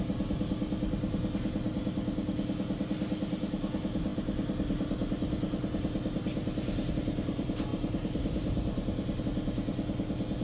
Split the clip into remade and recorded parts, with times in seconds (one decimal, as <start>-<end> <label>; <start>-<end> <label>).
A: 0.0-7.7 recorded; 7.7-9.2 remade; 9.2-10.4 recorded